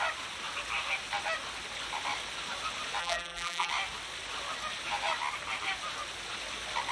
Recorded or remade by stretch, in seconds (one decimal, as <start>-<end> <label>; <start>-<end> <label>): 0.0-3.0 recorded; 3.0-3.7 remade; 3.7-6.9 recorded